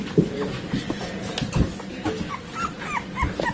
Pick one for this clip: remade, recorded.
recorded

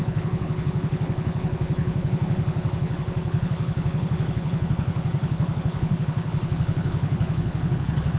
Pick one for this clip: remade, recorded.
remade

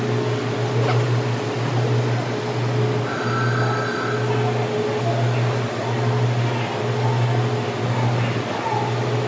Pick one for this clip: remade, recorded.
recorded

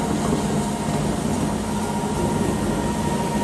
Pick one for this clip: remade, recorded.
recorded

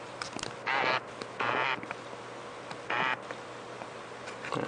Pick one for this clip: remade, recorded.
recorded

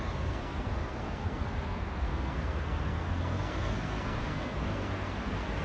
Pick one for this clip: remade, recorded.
remade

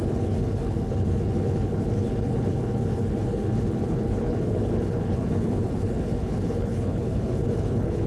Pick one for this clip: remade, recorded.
remade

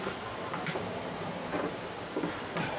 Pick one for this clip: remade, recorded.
remade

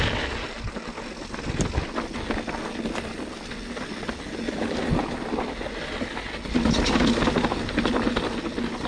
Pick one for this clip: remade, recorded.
recorded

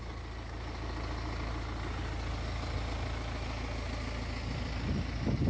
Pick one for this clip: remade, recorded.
recorded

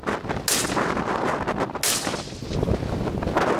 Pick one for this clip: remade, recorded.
recorded